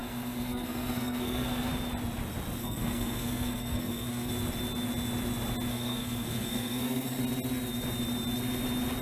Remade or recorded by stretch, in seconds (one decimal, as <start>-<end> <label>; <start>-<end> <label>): 0.0-1.7 remade; 1.7-2.6 recorded; 2.6-4.3 remade; 4.3-5.7 recorded; 5.7-7.2 remade; 7.2-9.0 recorded